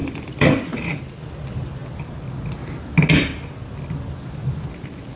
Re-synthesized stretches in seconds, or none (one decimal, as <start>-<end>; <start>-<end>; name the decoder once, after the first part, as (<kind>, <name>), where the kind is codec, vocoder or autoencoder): 0.0-1.0 (vocoder, BigVGAN v2)

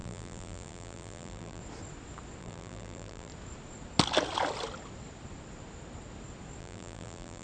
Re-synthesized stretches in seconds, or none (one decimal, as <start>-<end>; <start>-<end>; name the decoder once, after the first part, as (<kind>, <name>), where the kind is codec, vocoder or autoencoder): 0.0-1.6 (vocoder, BigVGAN v2); 2.4-3.3; 6.6-7.4